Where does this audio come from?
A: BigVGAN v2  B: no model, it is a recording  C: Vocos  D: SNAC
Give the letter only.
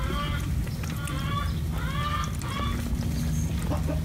B